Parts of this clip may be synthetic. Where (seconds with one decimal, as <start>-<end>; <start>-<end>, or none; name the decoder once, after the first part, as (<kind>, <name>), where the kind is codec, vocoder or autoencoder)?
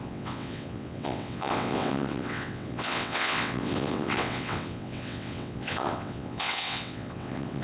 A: 0.0-7.6 (vocoder, WaveNeXt)